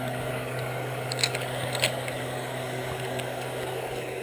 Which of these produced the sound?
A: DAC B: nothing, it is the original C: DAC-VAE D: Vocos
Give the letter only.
A